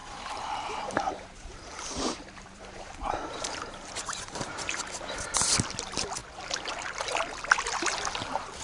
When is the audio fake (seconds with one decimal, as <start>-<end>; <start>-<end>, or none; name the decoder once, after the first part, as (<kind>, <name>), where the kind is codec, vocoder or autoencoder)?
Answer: 0.0-4.8 (vocoder, BigVGAN v2)